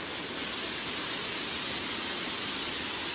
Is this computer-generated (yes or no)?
no